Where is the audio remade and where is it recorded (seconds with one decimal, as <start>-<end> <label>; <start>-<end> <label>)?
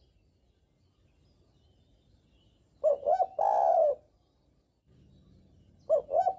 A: 0.0-6.4 recorded